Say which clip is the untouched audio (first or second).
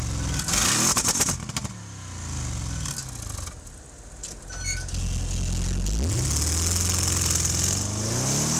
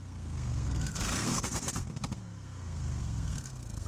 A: first